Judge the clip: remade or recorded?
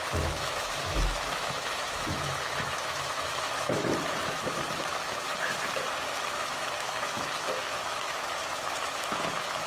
remade